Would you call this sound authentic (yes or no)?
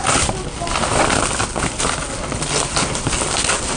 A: yes